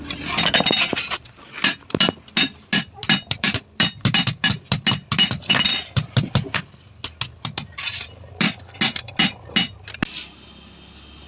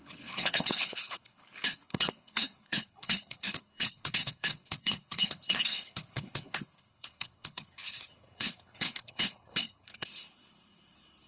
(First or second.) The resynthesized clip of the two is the second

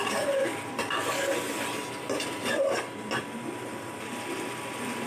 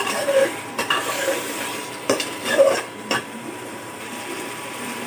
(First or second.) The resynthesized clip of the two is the second